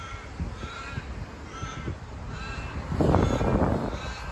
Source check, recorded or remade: recorded